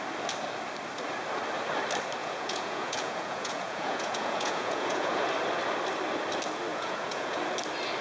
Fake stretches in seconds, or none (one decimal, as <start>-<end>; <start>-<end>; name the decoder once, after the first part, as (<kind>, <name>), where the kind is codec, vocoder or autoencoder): 2.2-5.2 (vocoder, Vocos); 6.7-7.4